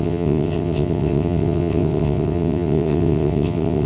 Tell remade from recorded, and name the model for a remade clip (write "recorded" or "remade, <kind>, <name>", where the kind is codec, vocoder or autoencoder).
remade, vocoder, WaveNeXt